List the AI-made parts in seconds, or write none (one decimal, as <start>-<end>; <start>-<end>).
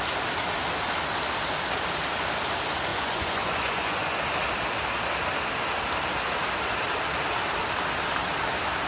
2.9-4.2